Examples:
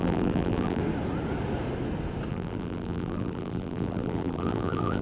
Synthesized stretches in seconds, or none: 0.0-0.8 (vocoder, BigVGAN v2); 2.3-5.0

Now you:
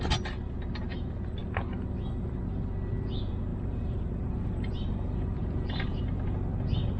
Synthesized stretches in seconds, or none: 3.5-6.0 (vocoder, BigVGAN v2)

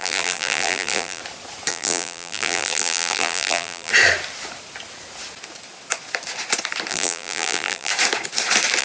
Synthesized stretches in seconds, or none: 0.0-1.2 (vocoder, BigVGAN v2); 1.7-3.9; 6.9-7.9

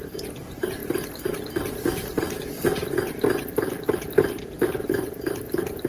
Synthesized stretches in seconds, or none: 0.0-0.8 (vocoder, BigVGAN v2); 4.3-5.9

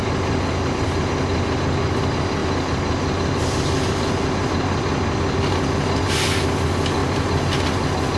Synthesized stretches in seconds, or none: 7.0-7.6 (vocoder, BigVGAN v2)

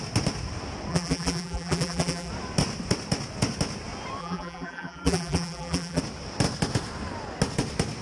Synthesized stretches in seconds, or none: 0.9-2.3 (vocoder, BigVGAN v2); 4.2-6.0

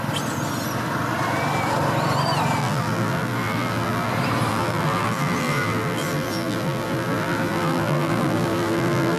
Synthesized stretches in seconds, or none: 2.6-4.1 (vocoder, BigVGAN v2); 4.5-9.2